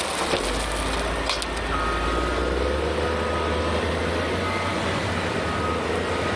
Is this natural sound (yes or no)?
yes